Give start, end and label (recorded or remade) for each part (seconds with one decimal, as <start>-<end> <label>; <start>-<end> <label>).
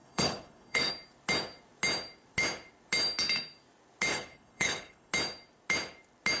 0.0-0.9 remade; 0.9-4.1 recorded; 4.1-5.1 remade; 5.1-6.4 recorded